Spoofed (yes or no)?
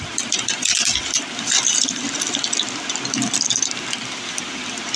no